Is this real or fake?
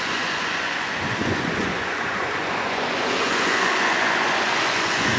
fake